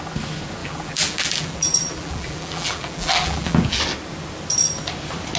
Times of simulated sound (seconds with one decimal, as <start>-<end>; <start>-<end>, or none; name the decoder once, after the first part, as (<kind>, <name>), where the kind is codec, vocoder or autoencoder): 0.6-3.8 (vocoder, BigVGAN v2)